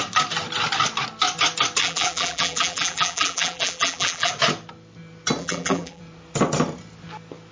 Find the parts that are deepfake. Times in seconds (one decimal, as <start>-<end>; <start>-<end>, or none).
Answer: 1.8-4.3; 5.4-6.0